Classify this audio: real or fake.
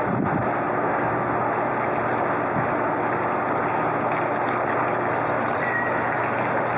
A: real